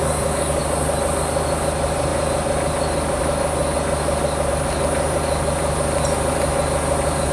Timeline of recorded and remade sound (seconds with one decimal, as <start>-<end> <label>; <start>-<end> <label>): 0.0-0.6 remade; 0.6-7.3 recorded